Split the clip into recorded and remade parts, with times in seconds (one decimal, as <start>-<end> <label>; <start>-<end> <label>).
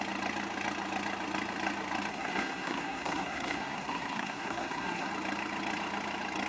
0.0-2.1 recorded; 2.1-5.1 remade; 5.1-6.5 recorded